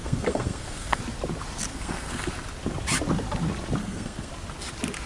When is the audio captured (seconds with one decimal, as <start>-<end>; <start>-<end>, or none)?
1.0-1.7; 2.3-3.8; 4.3-5.1